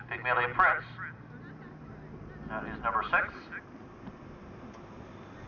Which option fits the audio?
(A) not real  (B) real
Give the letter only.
B